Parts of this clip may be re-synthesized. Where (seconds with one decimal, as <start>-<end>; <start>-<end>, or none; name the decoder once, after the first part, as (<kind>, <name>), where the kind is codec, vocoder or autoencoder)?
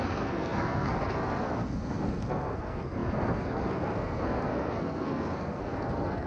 0.0-6.3 (codec, SNAC)